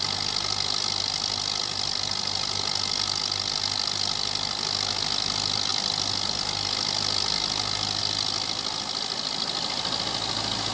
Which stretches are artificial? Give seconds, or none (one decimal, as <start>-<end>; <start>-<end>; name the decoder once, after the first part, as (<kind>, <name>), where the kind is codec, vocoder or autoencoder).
none